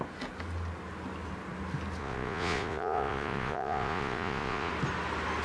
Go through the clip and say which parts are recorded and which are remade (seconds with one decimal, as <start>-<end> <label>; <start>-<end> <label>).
0.0-2.0 recorded; 2.0-4.7 remade; 4.7-5.4 recorded